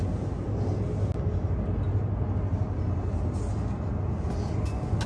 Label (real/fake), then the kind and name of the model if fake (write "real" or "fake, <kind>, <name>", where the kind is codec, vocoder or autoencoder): real